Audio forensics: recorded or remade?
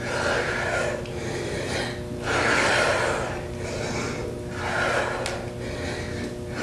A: recorded